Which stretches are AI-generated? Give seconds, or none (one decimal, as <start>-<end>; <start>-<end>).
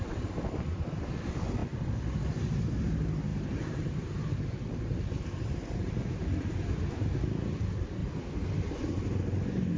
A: 3.3-6.3